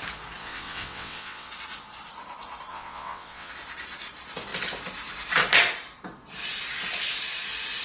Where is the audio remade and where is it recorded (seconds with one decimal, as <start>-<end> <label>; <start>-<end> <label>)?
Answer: 0.0-0.4 recorded; 0.4-1.5 remade; 1.5-2.7 recorded; 2.7-3.5 remade; 3.5-7.8 recorded